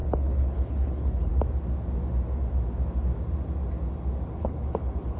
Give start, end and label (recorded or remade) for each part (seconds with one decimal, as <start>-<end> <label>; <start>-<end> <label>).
0.0-1.3 remade; 1.3-4.4 recorded; 4.4-5.2 remade